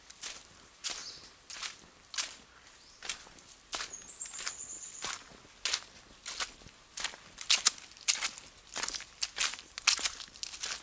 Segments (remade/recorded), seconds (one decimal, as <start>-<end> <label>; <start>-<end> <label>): 0.0-10.8 recorded

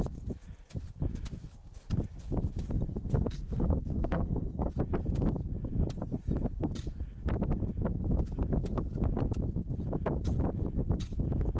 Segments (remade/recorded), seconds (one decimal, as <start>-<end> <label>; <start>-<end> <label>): 0.0-2.9 recorded; 2.9-4.7 remade; 4.7-11.6 recorded